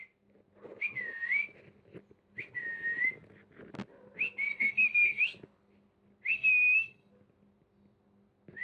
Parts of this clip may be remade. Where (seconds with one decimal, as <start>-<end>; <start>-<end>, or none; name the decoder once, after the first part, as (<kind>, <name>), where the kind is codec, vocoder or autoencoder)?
4.5-5.2 (codec, SNAC); 6.3-7.1